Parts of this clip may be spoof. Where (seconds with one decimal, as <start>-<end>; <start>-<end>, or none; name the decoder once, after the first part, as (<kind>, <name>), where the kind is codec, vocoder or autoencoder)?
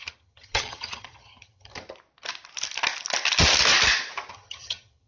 0.0-1.7 (vocoder, HiFi-GAN); 4.3-5.1